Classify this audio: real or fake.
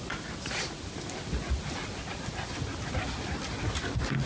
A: real